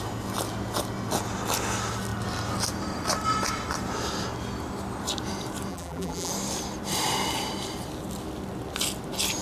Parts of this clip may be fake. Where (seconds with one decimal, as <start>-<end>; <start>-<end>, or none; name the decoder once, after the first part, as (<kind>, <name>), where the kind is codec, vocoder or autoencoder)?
5.7-6.3 (vocoder, BigVGAN v2)